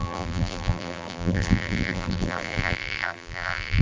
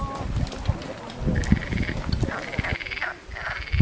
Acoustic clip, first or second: second